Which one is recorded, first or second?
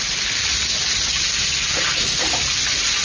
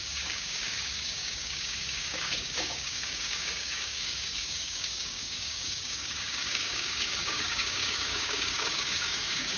first